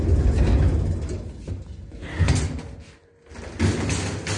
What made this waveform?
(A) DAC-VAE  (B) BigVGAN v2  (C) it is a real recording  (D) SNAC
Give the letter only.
C